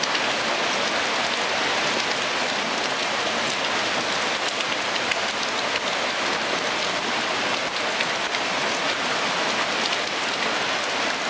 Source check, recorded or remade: recorded